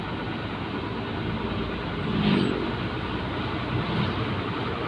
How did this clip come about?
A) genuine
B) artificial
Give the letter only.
A